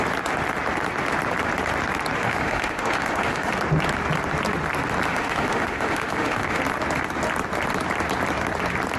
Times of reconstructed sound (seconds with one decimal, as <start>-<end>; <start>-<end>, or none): 2.2-3.5; 5.1-6.6